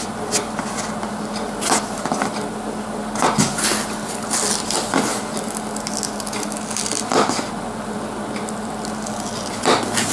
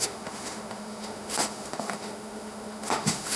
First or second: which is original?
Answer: first